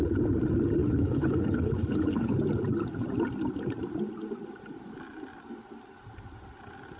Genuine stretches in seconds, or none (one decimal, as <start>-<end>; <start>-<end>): 0.0-0.8; 2.4-7.0